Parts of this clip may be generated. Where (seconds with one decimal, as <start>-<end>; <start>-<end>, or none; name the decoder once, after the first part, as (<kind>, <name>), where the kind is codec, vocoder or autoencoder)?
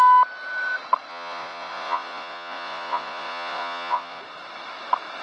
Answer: 1.1-4.2 (vocoder, Vocos)